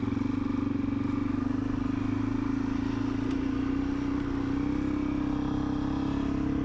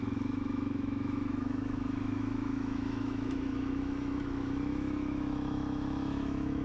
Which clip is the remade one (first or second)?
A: second